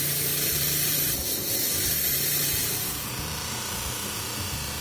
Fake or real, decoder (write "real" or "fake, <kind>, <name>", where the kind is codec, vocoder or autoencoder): fake, vocoder, BigVGAN v2